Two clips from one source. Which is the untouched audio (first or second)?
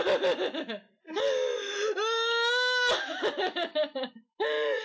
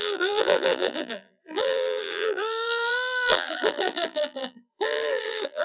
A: first